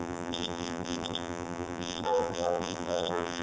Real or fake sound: fake